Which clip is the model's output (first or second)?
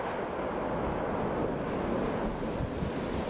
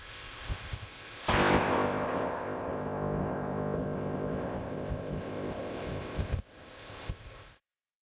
second